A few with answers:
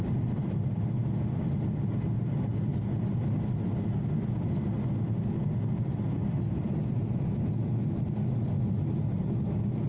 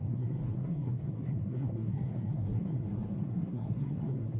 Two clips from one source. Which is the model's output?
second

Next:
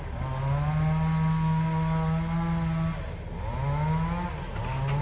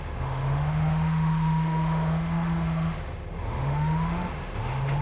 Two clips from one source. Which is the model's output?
second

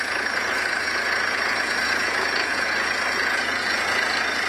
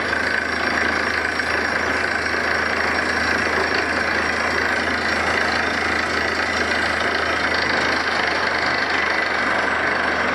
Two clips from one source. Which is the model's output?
first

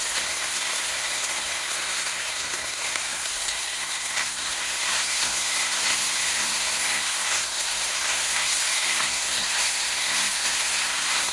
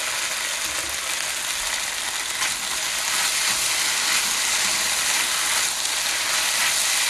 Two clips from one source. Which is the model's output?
first